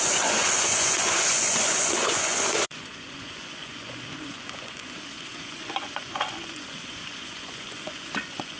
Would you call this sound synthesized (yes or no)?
yes